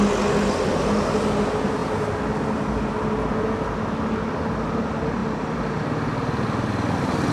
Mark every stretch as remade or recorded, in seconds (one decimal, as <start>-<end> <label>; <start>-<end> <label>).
0.0-7.3 recorded